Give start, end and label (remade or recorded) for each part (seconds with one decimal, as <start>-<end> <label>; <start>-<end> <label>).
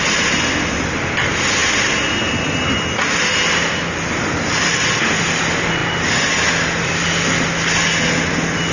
0.0-8.7 recorded